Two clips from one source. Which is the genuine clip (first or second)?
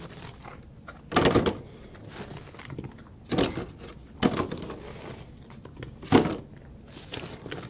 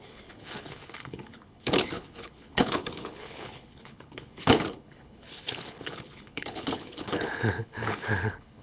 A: first